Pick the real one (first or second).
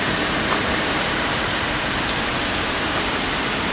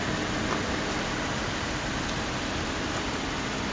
second